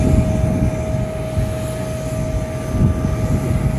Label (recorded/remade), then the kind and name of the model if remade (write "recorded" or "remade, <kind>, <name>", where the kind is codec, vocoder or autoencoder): recorded